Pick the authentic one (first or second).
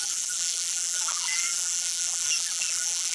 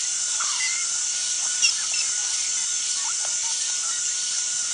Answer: second